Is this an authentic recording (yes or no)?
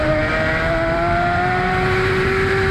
no